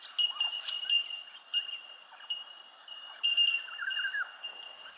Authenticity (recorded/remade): recorded